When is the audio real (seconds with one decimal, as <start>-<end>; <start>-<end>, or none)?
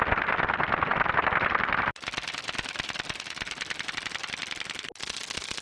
0.0-5.6